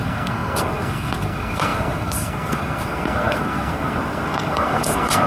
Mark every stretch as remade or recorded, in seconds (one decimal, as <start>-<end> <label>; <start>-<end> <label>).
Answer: 0.0-5.3 remade